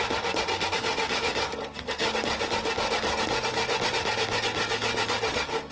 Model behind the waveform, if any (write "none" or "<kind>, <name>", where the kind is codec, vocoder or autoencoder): none